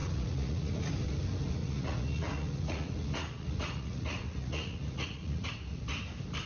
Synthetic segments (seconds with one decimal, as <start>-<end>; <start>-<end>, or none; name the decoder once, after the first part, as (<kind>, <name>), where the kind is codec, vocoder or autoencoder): 0.0-0.9 (vocoder, Vocos); 1.6-5.5